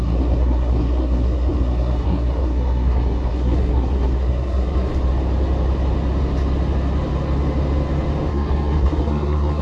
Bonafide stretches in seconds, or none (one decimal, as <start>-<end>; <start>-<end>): 4.9-8.3